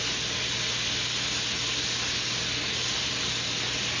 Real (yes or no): yes